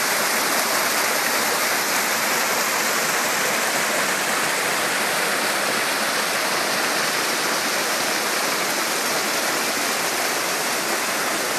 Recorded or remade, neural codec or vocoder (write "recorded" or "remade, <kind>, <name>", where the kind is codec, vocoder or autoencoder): recorded